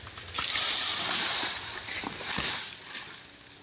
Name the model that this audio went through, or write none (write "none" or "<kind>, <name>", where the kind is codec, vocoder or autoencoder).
none